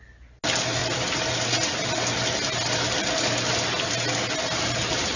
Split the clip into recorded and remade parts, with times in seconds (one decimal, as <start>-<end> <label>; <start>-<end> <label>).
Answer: 0.0-5.2 recorded

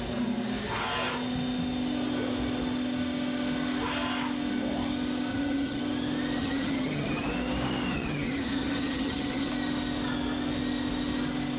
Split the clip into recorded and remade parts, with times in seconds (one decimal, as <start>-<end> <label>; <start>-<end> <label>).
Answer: 0.0-5.3 recorded; 5.3-5.8 remade; 5.8-6.4 recorded; 6.4-7.3 remade; 7.3-7.9 recorded; 7.9-9.5 remade; 9.5-11.6 recorded

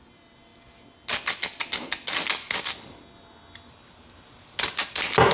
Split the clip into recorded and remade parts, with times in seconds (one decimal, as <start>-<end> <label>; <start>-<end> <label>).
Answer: 0.0-5.3 recorded

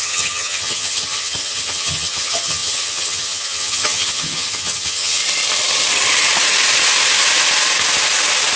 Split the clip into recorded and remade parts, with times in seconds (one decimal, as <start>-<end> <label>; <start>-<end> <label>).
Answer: 0.0-5.2 remade; 5.2-8.6 recorded

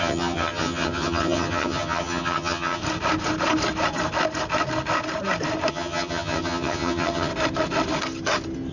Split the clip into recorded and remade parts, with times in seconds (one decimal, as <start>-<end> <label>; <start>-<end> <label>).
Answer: 0.0-2.8 remade; 2.8-5.7 recorded; 5.7-7.3 remade; 7.3-8.7 recorded

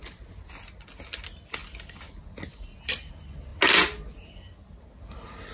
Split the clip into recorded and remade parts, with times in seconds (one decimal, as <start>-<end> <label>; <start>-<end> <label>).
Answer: 0.0-5.5 recorded

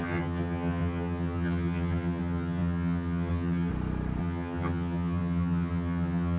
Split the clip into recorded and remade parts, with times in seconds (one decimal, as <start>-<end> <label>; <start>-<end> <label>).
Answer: 0.0-3.7 remade; 3.7-4.2 recorded; 4.2-6.4 remade